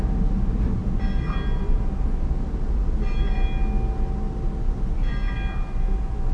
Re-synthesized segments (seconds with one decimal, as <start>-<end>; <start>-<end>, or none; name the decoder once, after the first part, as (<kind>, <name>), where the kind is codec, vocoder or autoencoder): none